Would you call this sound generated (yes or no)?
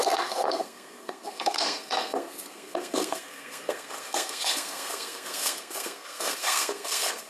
yes